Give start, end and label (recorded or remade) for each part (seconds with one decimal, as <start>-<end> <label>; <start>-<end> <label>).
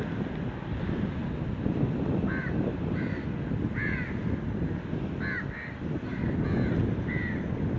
0.0-7.8 recorded